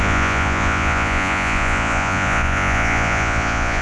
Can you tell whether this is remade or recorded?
remade